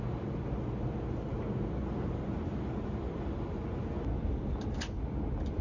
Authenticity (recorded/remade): recorded